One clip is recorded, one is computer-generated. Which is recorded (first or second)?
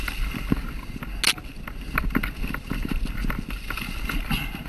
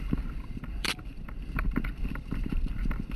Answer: first